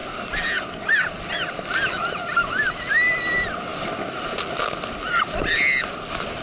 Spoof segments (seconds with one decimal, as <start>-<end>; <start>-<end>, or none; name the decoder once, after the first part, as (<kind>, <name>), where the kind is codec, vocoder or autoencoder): none